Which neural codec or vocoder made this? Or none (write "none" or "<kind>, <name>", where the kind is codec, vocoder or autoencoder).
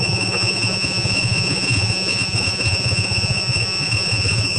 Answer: vocoder, Vocos